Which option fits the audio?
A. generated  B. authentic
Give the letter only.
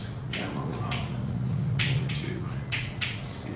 A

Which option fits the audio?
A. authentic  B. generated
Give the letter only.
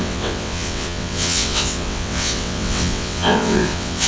B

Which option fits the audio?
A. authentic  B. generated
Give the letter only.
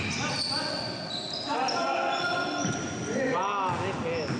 A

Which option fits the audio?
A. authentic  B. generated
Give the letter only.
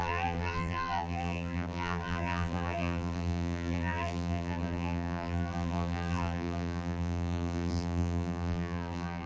B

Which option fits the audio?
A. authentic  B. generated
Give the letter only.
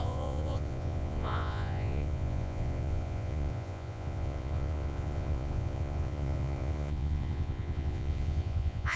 B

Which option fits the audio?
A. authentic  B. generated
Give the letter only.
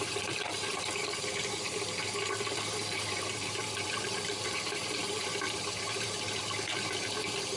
B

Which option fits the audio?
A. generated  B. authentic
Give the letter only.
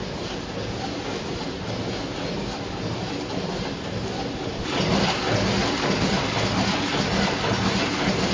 B